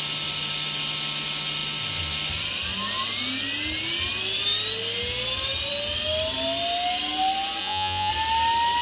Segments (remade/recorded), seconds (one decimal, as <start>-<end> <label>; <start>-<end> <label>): 0.0-7.6 recorded; 7.6-8.1 remade; 8.1-8.8 recorded